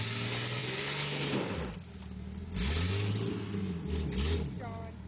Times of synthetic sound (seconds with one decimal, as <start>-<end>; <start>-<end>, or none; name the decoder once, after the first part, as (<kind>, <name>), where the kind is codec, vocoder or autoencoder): none